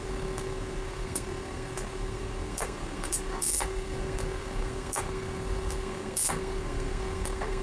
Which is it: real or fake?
fake